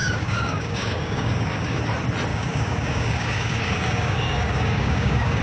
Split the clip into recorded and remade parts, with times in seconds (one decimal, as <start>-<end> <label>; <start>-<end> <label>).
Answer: 0.0-1.8 remade; 1.8-2.3 recorded; 2.3-5.4 remade